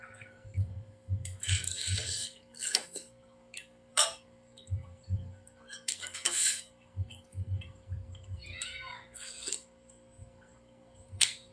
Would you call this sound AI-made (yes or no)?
yes